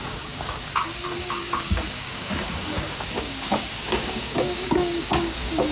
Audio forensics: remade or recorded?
remade